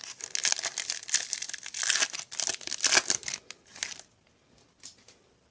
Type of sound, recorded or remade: recorded